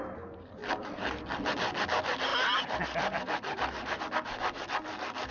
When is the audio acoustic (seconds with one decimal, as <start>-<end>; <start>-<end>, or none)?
0.0-2.3; 4.0-5.3